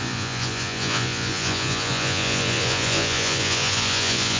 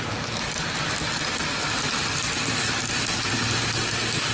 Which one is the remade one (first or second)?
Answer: first